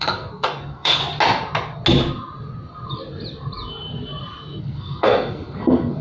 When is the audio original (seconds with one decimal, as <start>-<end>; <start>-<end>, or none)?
1.0-4.6

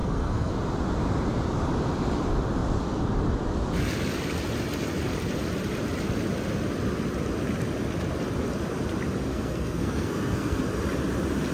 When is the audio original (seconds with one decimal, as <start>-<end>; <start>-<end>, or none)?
0.5-9.3; 10.6-11.5

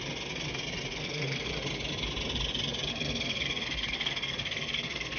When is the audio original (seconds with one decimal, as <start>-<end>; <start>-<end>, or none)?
0.0-0.9; 1.5-2.9

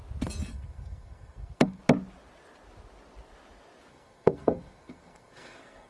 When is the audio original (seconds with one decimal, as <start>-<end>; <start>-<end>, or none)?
0.0-0.5; 1.8-3.9

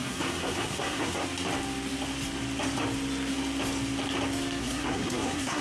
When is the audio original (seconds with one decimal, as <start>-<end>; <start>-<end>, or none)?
1.2-4.6

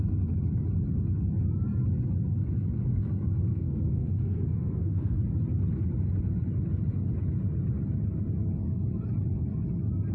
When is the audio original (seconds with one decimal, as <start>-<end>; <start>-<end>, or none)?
0.0-2.9; 5.2-10.1

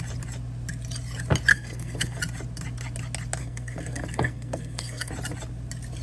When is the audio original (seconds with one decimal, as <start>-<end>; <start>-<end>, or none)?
0.0-1.5; 2.2-3.4; 5.1-6.0